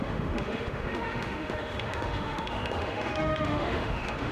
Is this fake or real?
fake